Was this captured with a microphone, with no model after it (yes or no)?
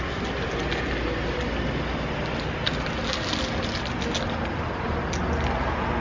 yes